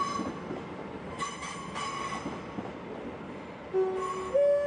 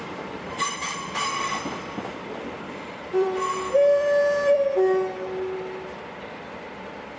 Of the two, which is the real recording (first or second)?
first